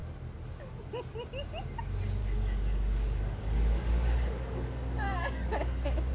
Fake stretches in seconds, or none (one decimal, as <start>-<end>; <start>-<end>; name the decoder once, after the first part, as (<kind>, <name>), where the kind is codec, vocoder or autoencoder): 2.2-6.1 (codec, DAC)